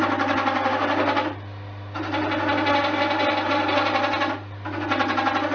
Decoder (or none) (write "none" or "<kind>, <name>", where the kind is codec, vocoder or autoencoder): none